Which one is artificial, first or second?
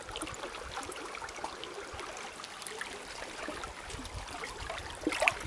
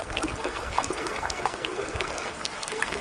second